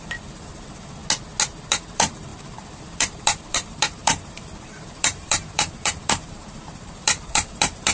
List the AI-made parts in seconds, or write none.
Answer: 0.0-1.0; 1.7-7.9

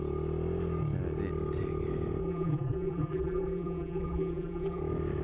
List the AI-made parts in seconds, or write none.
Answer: 2.2-4.8

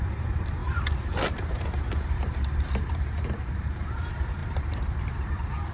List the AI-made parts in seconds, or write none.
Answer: 0.0-5.7

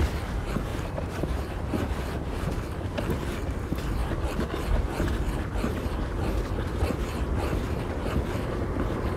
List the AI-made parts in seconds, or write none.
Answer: 0.7-1.6

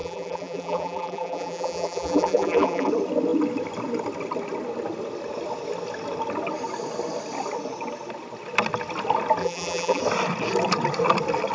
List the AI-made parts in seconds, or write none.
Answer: 0.0-2.9; 9.4-10.0